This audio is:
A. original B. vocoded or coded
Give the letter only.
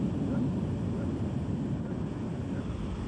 A